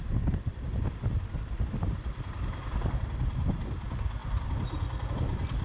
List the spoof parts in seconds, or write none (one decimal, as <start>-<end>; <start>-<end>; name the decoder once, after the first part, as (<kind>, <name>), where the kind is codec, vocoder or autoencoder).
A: 4.2-5.1 (vocoder, BigVGAN v2)